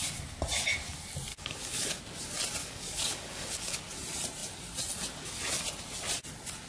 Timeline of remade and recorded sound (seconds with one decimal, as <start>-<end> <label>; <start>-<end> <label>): 0.0-1.3 recorded; 1.3-2.0 remade; 2.0-2.6 recorded; 2.6-3.8 remade; 3.8-6.7 recorded